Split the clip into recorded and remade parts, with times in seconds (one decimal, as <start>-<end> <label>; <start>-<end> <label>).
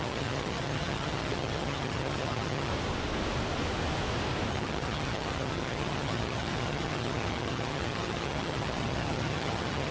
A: 0.0-2.7 remade; 2.7-4.5 recorded; 4.5-9.9 remade